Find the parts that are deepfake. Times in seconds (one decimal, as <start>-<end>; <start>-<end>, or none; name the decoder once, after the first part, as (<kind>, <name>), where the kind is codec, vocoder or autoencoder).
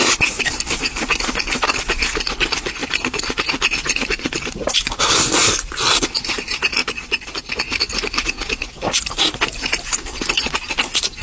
2.8-5.0 (vocoder, BigVGAN v2); 5.4-6.0; 6.8-7.5